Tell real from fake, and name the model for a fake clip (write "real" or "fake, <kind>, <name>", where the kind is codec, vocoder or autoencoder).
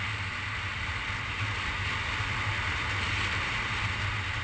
real